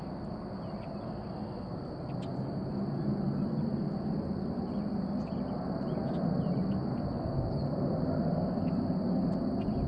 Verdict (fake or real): real